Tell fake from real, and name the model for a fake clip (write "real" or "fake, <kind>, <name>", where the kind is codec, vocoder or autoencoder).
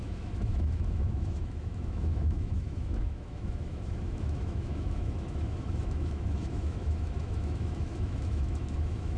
fake, autoencoder, DAC-VAE